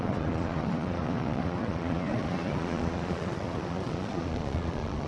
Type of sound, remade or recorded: remade